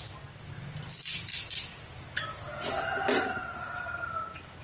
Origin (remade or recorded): recorded